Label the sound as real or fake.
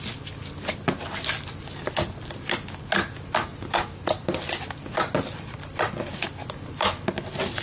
real